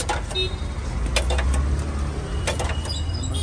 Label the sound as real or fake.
real